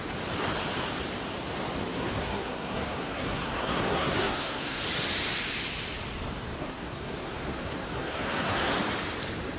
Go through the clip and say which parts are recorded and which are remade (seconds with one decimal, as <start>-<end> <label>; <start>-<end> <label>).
0.0-1.9 recorded; 1.9-4.8 remade; 4.8-6.6 recorded; 6.6-8.7 remade; 8.7-9.6 recorded